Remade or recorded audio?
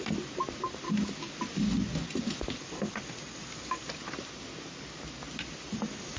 recorded